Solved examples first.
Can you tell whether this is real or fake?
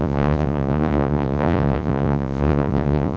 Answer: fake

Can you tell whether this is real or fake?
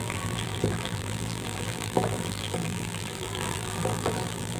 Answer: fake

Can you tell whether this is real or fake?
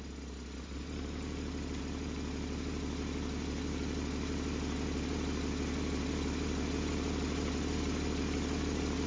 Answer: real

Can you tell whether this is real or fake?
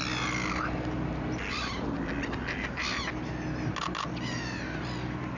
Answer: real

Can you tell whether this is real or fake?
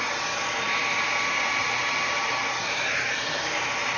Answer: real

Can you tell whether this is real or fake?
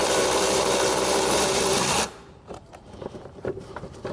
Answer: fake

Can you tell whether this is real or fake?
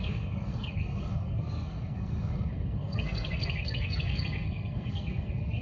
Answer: fake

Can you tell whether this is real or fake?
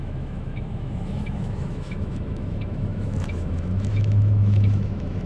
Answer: fake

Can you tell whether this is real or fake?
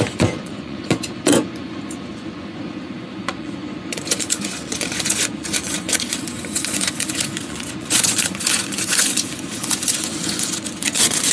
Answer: fake